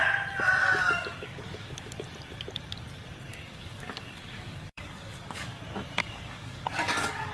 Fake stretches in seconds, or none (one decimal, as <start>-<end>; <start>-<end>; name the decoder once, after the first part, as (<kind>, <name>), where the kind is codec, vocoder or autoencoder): 0.6-1.9 (codec, DAC); 3.3-5.6; 6.0-7.3